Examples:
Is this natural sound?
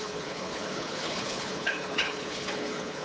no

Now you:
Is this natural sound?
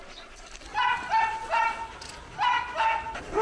yes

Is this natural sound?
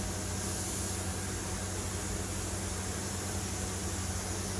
yes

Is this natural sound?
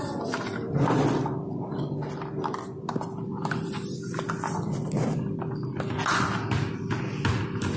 yes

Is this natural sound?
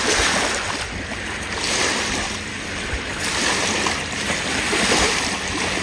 yes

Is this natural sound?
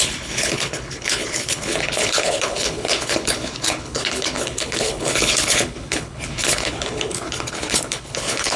no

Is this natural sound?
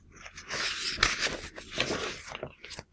yes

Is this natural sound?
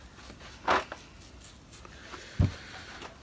yes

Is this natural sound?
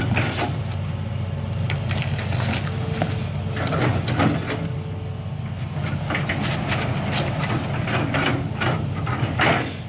yes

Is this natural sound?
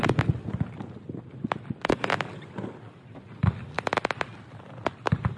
yes